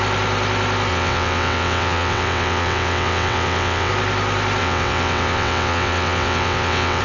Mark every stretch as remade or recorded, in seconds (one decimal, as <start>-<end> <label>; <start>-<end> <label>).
0.0-0.9 recorded; 0.9-3.9 remade; 3.9-4.6 recorded; 4.6-7.0 remade